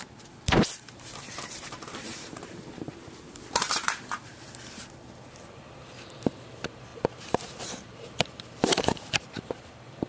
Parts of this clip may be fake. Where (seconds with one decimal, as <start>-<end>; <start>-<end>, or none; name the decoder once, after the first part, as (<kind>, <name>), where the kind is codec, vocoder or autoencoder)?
0.0-4.3 (vocoder, BigVGAN v2); 6.3-10.1

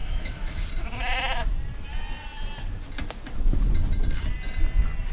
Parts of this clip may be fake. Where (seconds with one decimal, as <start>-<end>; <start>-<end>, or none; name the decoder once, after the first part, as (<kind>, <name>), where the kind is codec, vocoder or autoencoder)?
0.0-0.6 (autoencoder, DAC-VAE)

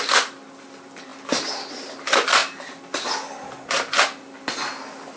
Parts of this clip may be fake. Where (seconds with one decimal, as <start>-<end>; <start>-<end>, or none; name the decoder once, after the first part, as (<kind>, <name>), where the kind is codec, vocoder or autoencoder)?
none